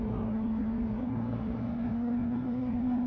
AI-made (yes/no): yes